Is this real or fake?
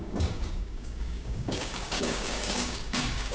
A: fake